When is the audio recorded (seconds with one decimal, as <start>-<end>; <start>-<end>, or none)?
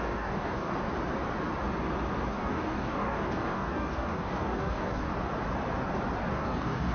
0.7-2.3; 5.1-6.3